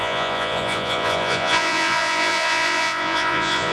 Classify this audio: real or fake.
fake